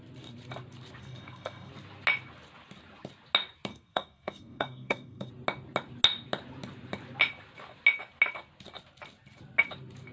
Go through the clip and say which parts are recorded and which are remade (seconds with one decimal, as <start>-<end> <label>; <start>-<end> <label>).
0.0-1.0 recorded; 1.0-1.7 remade; 1.7-3.7 recorded; 3.7-5.3 remade; 5.3-10.1 recorded